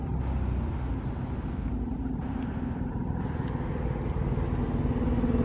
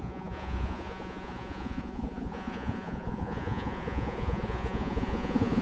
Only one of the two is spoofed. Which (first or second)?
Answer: second